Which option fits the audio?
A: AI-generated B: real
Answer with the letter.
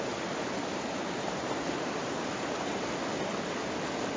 B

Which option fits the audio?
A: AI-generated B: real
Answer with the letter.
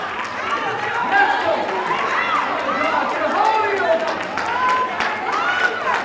B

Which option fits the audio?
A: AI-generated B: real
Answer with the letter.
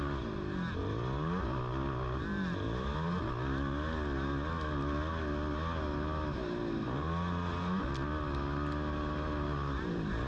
B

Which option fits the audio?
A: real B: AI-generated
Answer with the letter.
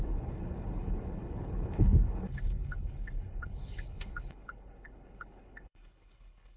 B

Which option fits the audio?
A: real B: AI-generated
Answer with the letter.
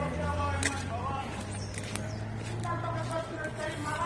A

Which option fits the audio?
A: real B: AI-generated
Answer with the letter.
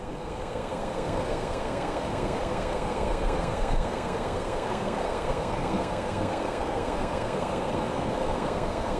B